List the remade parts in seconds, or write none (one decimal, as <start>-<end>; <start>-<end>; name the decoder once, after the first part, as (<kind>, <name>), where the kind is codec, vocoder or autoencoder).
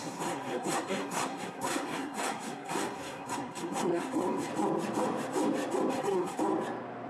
0.0-4.5 (codec, SNAC); 5.9-6.4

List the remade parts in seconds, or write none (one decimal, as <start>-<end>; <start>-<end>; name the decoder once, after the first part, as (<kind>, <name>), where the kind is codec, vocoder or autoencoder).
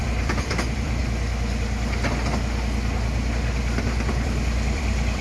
0.0-1.0 (vocoder, BigVGAN v2); 4.1-5.2